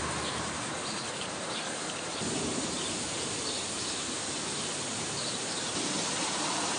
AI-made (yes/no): yes